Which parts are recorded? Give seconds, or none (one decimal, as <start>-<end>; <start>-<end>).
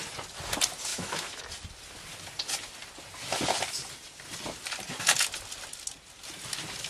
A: 0.0-0.9; 1.4-6.9